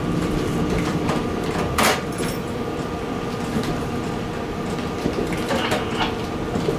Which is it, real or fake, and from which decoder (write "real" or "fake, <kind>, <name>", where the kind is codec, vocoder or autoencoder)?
fake, vocoder, BigVGAN v2